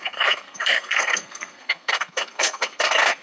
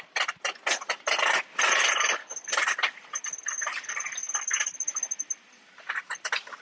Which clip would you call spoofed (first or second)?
first